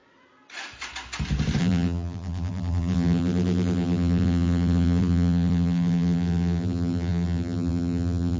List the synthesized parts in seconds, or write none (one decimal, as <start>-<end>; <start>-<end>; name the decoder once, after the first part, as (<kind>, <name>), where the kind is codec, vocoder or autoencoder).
1.6-8.4 (vocoder, BigVGAN v2)